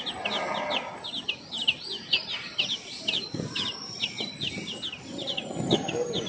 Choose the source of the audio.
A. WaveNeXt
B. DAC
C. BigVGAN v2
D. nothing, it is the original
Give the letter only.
C